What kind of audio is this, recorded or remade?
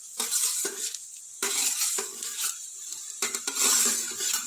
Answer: remade